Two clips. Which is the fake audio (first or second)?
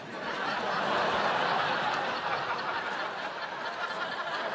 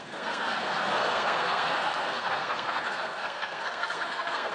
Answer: second